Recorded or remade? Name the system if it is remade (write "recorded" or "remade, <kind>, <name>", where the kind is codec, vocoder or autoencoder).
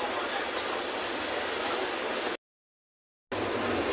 recorded